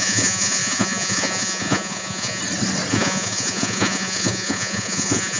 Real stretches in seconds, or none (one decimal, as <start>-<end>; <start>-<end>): 2.4-2.9